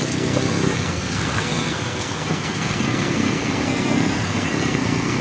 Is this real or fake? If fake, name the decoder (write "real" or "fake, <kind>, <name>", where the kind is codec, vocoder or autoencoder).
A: fake, codec, SNAC